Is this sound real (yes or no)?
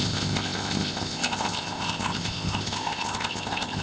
no